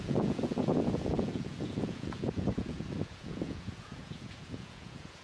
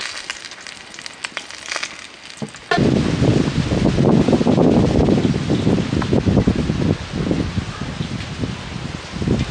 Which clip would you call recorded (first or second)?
second